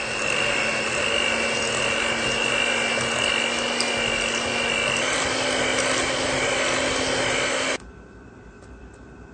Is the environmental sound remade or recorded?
recorded